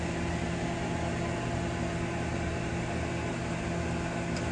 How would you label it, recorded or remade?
recorded